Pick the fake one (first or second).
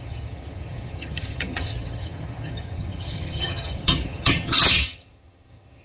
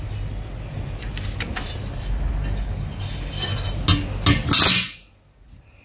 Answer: first